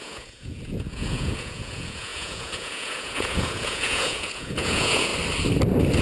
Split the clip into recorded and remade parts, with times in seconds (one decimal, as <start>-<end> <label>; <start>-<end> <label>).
0.0-5.1 remade; 5.1-6.0 recorded